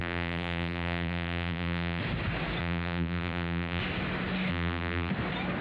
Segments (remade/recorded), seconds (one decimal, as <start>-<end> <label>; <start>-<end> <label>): 0.0-2.0 remade; 2.0-2.6 recorded; 2.6-3.8 remade; 3.8-4.5 recorded; 4.5-5.1 remade; 5.1-5.6 recorded